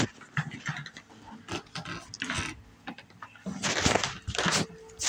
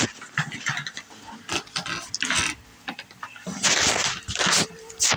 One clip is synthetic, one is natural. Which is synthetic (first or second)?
second